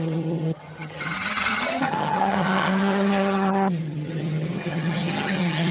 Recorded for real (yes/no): no